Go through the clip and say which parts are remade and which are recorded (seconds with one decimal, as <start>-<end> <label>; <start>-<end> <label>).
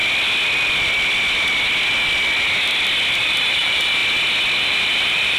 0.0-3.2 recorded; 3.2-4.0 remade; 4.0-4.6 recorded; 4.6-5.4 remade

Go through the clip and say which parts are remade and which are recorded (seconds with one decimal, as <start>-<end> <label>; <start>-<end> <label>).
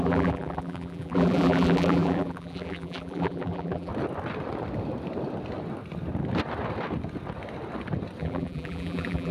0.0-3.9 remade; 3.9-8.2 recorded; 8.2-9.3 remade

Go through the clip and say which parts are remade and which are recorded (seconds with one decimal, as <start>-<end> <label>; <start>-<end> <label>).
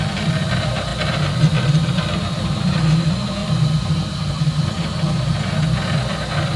0.0-0.9 recorded; 0.9-2.0 remade; 2.0-3.4 recorded; 3.4-4.3 remade; 4.3-6.6 recorded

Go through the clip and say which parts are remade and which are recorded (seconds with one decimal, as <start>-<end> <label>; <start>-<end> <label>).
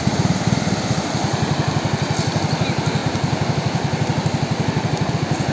0.0-5.5 recorded